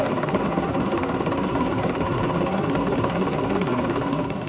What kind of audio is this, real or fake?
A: fake